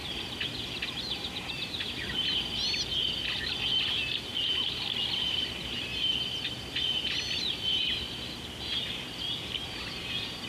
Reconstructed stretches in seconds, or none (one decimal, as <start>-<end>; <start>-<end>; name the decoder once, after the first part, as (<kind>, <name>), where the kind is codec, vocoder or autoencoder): 0.0-10.5 (vocoder, BigVGAN v2)